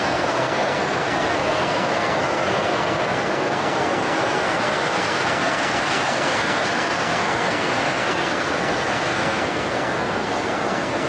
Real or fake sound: fake